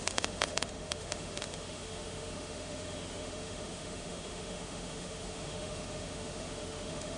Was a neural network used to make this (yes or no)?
yes